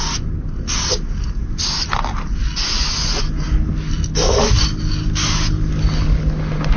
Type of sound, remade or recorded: recorded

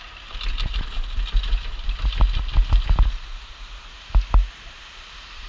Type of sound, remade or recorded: recorded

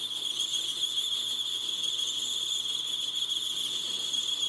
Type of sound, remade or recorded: recorded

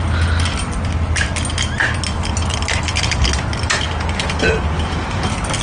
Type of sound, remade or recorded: recorded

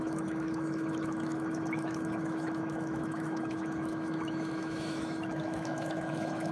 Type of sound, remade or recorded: remade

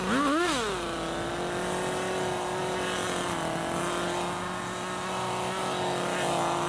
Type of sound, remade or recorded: recorded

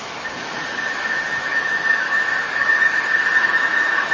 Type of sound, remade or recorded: remade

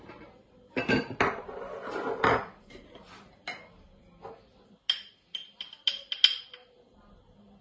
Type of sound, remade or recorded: recorded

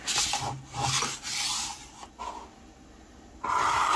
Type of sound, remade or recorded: recorded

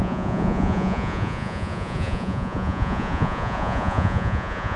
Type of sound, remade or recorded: remade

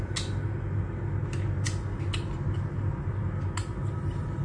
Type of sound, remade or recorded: recorded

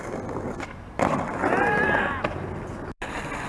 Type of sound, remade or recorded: recorded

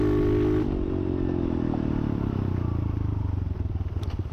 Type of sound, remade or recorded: recorded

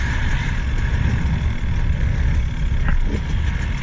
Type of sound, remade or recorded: recorded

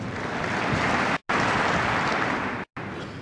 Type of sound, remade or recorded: recorded